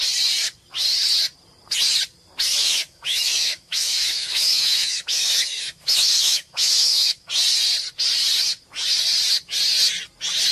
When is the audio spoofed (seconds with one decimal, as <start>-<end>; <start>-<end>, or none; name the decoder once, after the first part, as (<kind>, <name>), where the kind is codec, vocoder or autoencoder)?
2.6-7.3 (autoencoder, DAC-VAE)